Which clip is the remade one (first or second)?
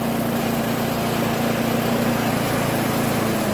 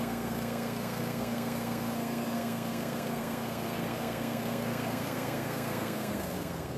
second